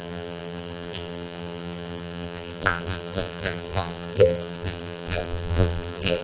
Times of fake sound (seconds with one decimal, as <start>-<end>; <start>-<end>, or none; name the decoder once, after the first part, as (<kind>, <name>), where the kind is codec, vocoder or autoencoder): 0.0-6.2 (vocoder, BigVGAN v2)